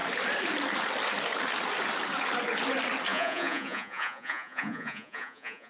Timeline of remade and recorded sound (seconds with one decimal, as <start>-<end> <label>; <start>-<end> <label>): 0.0-3.1 recorded; 3.1-5.7 remade